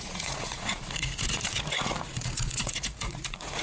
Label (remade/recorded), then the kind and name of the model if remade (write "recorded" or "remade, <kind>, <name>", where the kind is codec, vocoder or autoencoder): remade, vocoder, Vocos